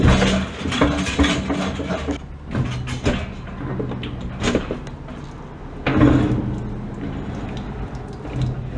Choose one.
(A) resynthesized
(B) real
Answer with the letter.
B